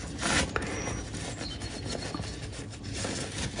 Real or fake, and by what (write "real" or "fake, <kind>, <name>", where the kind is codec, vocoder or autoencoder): real